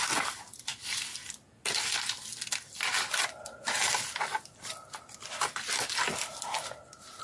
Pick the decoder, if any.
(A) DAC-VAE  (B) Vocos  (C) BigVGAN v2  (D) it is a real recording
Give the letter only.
D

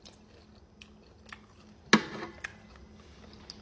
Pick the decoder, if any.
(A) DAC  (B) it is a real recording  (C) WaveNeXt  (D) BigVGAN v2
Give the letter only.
B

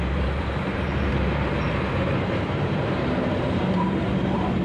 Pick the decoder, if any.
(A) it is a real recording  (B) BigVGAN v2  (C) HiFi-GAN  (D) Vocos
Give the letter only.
B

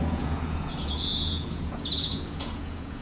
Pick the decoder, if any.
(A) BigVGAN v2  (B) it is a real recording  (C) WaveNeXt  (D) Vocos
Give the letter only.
D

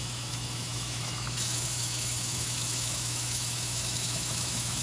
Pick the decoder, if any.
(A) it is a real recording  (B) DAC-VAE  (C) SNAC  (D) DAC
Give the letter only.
B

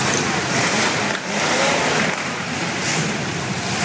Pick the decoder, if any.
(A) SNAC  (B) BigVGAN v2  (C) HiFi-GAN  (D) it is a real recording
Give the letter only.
B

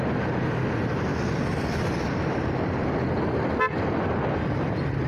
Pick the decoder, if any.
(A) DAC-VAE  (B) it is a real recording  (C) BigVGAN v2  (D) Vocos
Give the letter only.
B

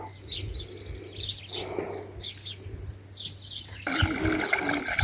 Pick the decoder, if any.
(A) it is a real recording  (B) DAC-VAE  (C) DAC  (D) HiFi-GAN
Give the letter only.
A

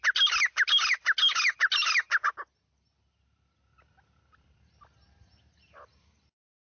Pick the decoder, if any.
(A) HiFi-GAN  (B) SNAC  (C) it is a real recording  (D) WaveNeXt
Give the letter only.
C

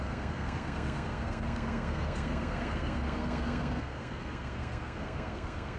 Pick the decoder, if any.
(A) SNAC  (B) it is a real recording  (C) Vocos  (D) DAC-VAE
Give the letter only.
A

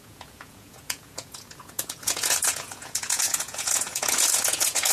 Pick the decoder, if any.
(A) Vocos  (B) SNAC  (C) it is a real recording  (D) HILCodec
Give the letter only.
A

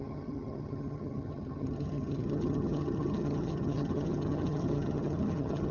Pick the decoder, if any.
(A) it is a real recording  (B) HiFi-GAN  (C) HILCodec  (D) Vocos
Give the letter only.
B